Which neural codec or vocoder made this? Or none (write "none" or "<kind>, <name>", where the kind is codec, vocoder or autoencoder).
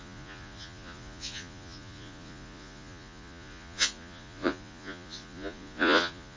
vocoder, Vocos